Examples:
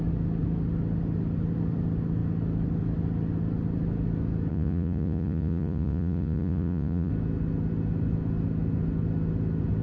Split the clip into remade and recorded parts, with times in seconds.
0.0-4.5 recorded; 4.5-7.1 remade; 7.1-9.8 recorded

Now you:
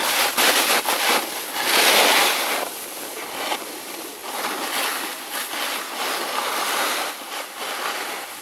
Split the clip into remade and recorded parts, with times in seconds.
0.0-8.4 recorded

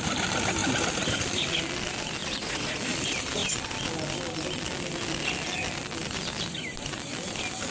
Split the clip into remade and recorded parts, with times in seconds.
0.0-2.2 recorded; 2.2-2.8 remade; 2.8-7.7 recorded

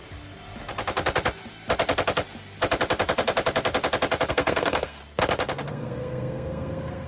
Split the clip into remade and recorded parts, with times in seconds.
0.0-4.3 recorded; 4.3-5.0 remade; 5.0-5.7 recorded; 5.7-7.1 remade

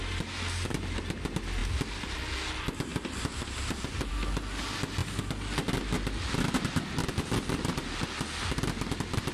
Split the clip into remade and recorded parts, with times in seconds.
0.0-2.9 recorded; 2.9-4.1 remade; 4.1-9.3 recorded